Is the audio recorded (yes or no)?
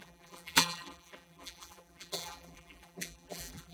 no